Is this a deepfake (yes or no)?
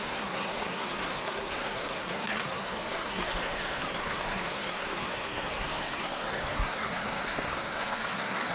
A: yes